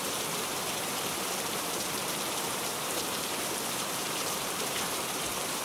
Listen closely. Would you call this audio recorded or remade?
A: remade